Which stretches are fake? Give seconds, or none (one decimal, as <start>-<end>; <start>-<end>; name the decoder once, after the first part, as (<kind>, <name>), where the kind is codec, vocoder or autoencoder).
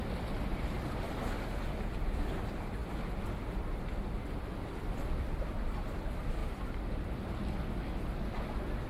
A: 0.5-1.6 (vocoder, BigVGAN v2)